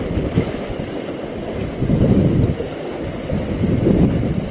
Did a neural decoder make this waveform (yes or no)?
yes